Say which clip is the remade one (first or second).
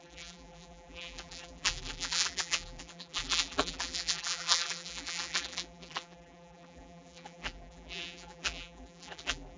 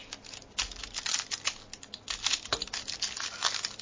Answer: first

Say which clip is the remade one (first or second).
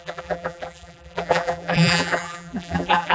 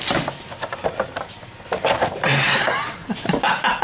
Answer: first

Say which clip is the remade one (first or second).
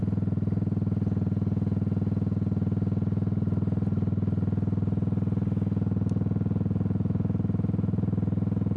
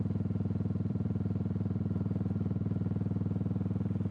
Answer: second